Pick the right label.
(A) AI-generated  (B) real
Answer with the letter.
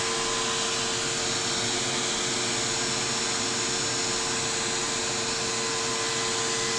B